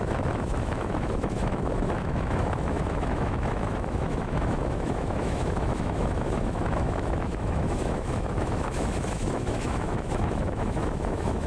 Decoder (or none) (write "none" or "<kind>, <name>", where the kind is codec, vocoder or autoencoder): autoencoder, DAC-VAE